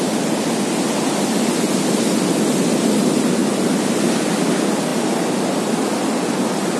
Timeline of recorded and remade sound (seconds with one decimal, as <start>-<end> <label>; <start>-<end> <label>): 0.0-6.8 recorded